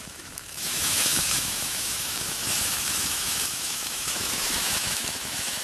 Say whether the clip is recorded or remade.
remade